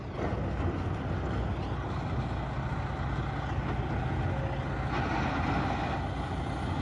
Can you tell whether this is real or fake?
real